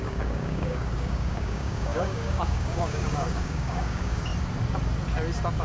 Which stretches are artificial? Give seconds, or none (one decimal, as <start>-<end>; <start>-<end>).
0.0-4.3